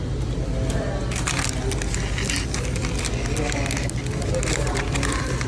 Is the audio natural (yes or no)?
yes